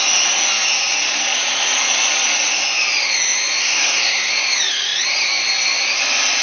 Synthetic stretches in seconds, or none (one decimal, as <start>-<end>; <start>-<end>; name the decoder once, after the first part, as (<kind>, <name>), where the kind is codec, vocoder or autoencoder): 3.6-4.3 (codec, SNAC)